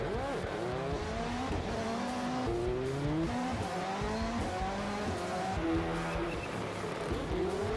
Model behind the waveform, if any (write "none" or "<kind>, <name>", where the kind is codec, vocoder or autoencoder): none